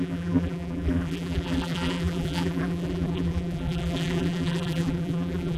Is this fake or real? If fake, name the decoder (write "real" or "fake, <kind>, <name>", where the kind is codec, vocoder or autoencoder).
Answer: fake, vocoder, BigVGAN v2